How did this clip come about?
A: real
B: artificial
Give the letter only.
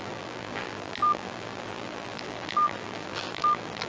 B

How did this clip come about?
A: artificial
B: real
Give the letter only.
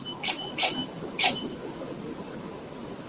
B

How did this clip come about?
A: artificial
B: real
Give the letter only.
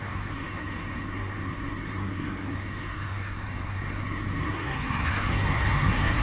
A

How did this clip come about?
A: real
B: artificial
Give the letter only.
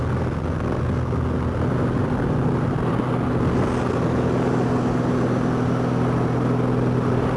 A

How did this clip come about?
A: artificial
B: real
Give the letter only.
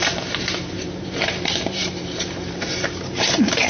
A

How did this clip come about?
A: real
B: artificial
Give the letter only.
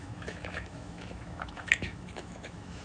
B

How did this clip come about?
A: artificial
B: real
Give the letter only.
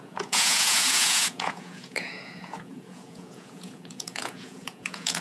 A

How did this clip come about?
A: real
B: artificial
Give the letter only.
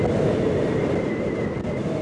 A